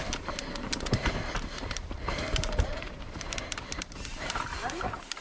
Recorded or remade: remade